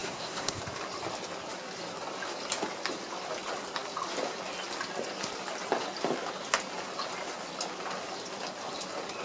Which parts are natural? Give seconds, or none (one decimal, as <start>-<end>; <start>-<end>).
0.6-9.2